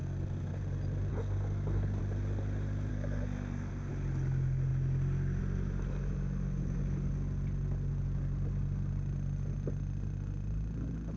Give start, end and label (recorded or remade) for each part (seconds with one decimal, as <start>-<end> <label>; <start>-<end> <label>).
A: 0.0-0.6 remade; 0.6-1.1 recorded; 1.1-2.0 remade; 2.0-2.9 recorded; 2.9-3.9 remade; 3.9-11.2 recorded